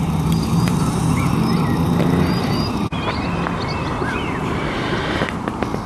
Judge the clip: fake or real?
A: real